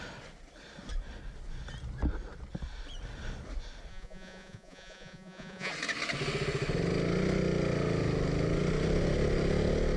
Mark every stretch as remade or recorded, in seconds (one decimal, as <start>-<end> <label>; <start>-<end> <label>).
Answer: 0.0-3.9 recorded; 3.9-5.7 remade; 5.7-10.0 recorded